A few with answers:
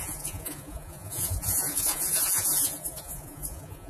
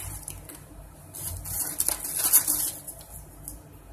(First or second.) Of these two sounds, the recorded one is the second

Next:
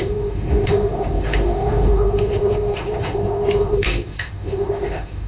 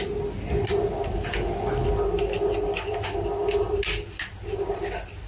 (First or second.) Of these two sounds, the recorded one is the second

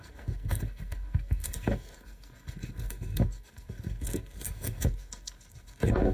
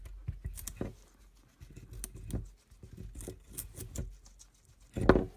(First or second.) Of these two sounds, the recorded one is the second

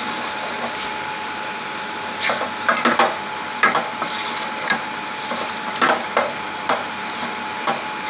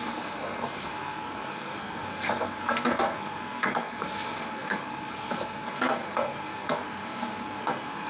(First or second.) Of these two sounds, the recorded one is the first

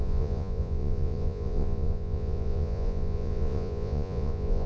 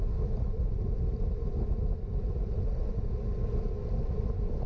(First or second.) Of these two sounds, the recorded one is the second